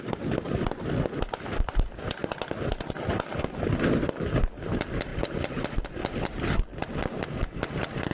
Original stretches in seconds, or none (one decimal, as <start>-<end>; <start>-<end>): 0.0-8.1